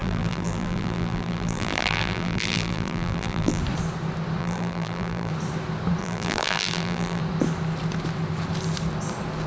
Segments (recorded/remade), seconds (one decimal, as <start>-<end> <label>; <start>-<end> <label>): 0.0-3.6 remade; 3.6-4.4 recorded; 4.4-5.3 remade; 5.3-6.0 recorded; 6.0-7.2 remade; 7.2-9.5 recorded